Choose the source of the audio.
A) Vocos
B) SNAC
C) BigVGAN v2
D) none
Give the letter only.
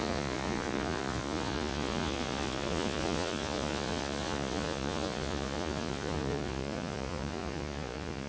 A